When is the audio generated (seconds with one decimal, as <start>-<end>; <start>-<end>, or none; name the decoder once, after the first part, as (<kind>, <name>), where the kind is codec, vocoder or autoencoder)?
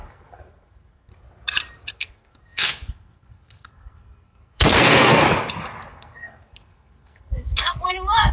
0.0-1.1 (codec, SNAC); 1.9-5.2; 5.9-8.3